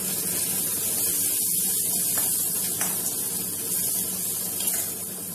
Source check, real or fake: real